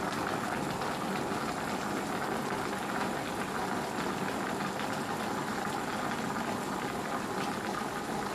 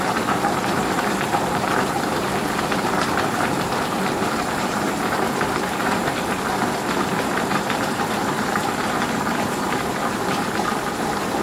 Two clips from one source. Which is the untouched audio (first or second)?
first